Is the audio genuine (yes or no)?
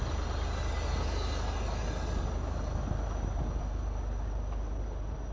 yes